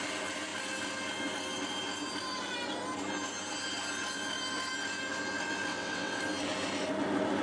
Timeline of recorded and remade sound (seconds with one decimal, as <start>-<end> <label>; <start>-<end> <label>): 0.0-5.7 recorded; 5.7-6.2 remade; 6.2-7.4 recorded